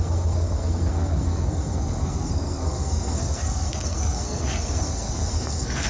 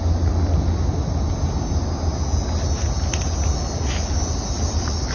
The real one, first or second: second